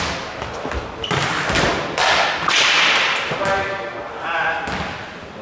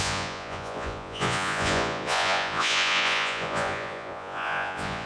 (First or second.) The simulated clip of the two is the second